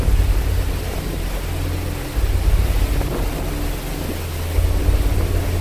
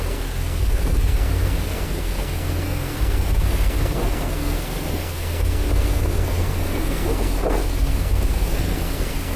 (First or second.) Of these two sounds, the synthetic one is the second